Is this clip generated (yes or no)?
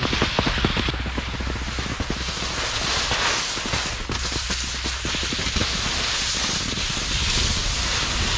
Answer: no